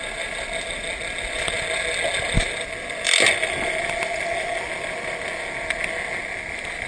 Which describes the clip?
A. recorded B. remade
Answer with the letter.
A